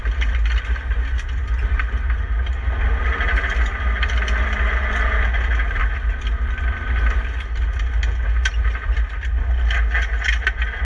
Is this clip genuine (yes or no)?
yes